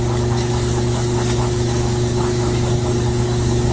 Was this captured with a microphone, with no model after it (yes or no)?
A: no